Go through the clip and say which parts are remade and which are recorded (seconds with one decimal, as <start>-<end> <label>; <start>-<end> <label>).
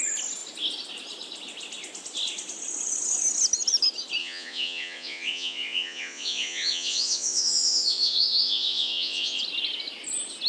0.0-4.2 recorded; 4.2-9.4 remade; 9.4-10.5 recorded